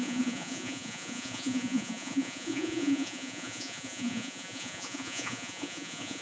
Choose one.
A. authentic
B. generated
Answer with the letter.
B